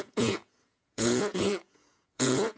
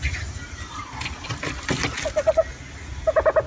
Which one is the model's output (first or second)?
first